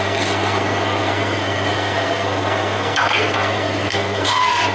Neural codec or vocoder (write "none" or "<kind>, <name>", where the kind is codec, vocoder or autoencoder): codec, SNAC